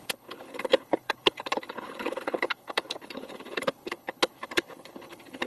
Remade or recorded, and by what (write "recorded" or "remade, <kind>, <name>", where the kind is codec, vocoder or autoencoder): remade, codec, HILCodec